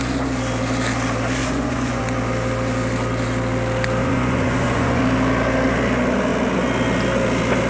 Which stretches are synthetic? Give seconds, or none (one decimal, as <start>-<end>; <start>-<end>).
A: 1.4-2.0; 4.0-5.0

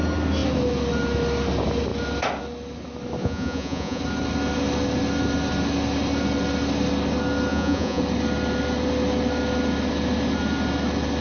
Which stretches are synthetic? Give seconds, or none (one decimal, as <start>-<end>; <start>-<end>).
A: 3.2-4.0; 7.5-8.0

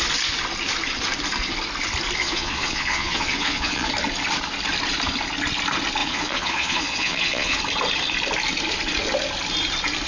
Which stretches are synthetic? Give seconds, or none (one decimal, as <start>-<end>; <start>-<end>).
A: 2.2-3.9; 6.0-7.6

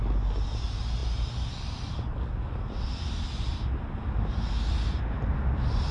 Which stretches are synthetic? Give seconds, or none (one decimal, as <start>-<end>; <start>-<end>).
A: none

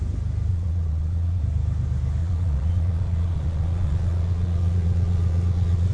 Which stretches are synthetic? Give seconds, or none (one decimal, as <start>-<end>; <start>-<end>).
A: 0.5-1.4; 2.2-5.9

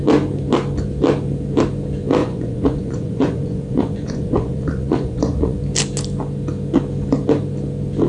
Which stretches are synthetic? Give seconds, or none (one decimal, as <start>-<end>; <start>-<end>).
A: 2.2-5.6

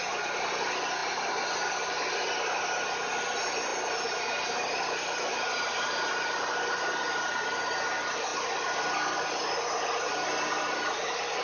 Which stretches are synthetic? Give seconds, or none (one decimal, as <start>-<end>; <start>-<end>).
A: none

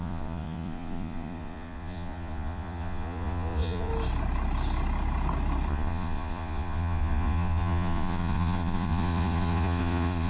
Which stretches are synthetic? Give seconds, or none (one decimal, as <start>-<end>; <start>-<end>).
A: 0.0-3.9; 5.7-10.3